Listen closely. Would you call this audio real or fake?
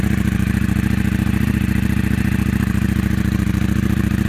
real